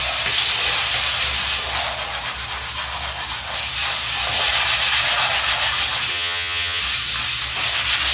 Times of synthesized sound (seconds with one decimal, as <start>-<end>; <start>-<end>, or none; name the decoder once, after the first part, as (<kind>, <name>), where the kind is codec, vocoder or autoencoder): 6.1-6.8 (vocoder, HiFi-GAN)